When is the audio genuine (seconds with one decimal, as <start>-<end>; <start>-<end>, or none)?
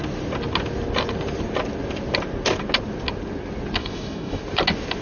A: 0.0-3.8; 4.4-5.0